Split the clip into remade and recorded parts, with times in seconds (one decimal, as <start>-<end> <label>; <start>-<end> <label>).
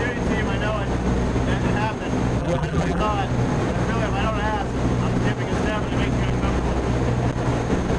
0.0-2.4 recorded; 2.4-3.0 remade; 3.0-8.0 recorded